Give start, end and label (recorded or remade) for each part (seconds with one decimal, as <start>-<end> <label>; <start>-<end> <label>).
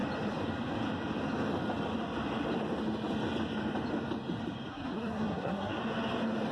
0.0-4.7 recorded; 4.7-5.8 remade; 5.8-6.5 recorded